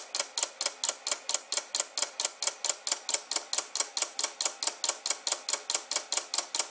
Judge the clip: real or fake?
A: real